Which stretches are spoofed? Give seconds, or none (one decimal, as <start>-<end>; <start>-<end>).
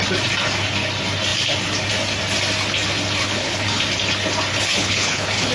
3.2-3.8; 4.5-5.5